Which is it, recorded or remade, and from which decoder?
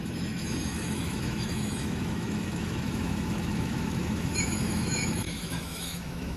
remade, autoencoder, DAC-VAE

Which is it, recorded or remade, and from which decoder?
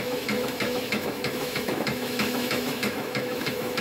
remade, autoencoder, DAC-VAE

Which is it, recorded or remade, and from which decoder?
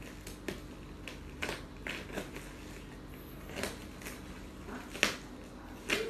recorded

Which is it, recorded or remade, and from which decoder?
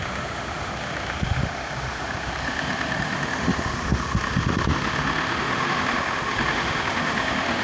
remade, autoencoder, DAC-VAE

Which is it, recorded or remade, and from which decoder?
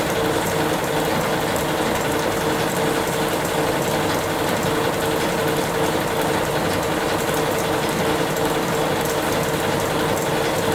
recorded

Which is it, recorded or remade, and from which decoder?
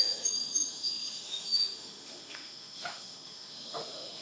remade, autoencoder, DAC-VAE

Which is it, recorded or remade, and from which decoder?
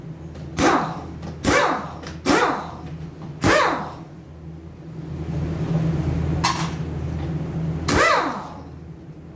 recorded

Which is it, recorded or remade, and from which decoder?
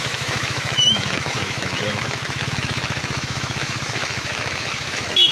remade, autoencoder, DAC-VAE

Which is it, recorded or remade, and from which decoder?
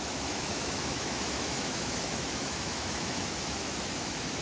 remade, autoencoder, DAC-VAE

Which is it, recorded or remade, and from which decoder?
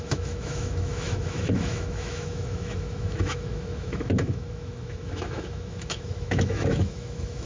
remade, autoencoder, DAC-VAE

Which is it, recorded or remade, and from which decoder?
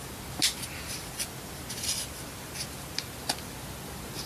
recorded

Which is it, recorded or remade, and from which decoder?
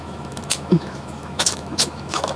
remade, autoencoder, DAC-VAE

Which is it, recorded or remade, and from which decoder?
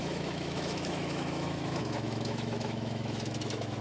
remade, autoencoder, DAC-VAE